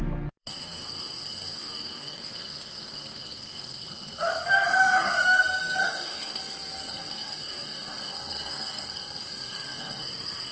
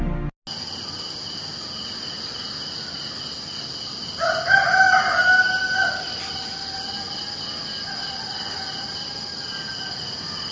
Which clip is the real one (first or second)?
second